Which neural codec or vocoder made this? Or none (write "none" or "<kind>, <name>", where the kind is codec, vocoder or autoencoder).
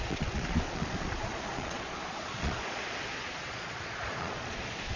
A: vocoder, Vocos